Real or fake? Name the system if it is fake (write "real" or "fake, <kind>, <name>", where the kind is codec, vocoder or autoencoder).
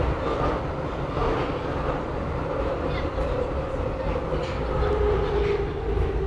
real